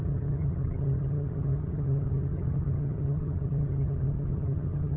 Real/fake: fake